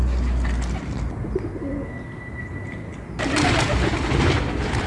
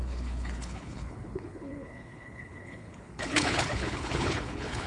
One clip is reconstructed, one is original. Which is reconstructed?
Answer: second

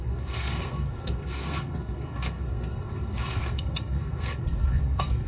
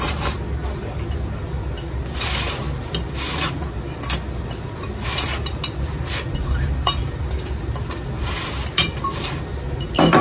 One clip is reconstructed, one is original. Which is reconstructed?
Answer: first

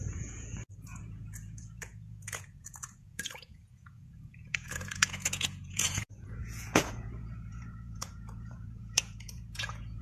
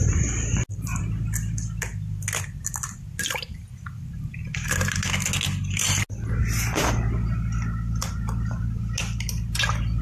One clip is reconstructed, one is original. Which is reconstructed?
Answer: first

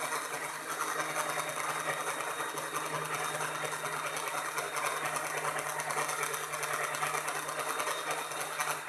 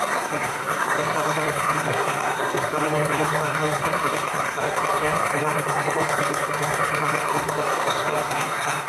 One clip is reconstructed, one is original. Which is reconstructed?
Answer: second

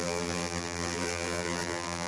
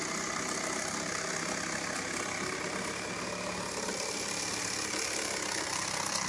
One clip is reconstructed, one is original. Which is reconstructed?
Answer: first